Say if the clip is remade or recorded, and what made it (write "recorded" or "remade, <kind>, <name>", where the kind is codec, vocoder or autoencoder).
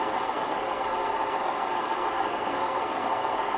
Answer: remade, codec, SNAC